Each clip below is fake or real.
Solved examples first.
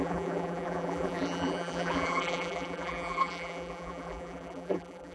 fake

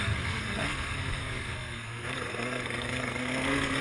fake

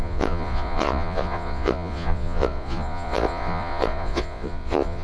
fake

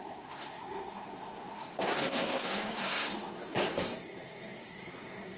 fake